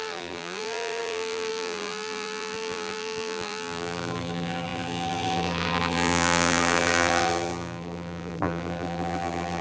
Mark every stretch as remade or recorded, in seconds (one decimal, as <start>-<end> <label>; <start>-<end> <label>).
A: 0.0-9.6 remade